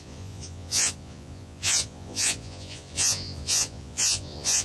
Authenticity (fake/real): fake